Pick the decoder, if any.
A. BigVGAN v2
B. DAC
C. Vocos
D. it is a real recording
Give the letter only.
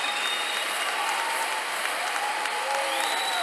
D